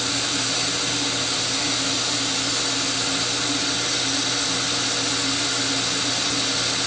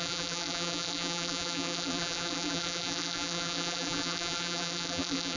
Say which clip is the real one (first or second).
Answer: first